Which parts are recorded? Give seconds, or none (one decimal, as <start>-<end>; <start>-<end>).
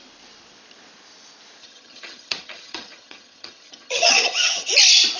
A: 0.0-1.6; 4.7-5.2